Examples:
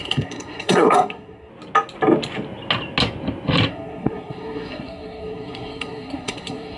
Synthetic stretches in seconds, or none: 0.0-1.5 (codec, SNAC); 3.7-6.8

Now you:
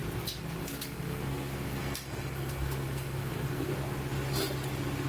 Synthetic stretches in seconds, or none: 0.6-3.7 (codec, SNAC)

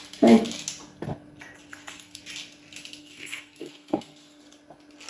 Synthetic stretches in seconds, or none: 1.7-2.2 (codec, SNAC); 3.0-4.4

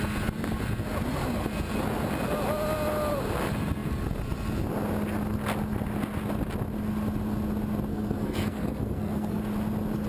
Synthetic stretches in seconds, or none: 7.9-9.4 (codec, SNAC)

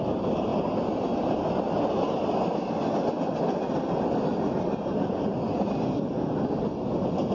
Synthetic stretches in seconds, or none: none

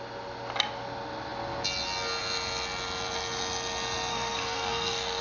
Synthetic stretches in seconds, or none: 4.1-5.2 (codec, SNAC)

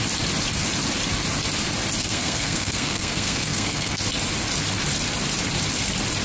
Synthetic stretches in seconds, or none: 2.0-4.0 (codec, SNAC)

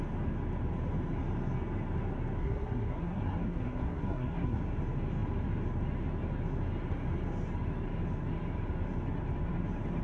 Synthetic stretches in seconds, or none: 2.4-4.6 (codec, SNAC)